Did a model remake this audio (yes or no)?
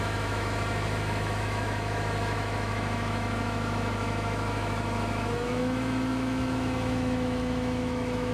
yes